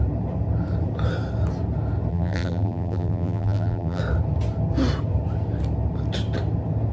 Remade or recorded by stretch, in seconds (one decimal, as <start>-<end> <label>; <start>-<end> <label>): 0.0-2.1 recorded; 2.1-4.0 remade; 4.0-6.9 recorded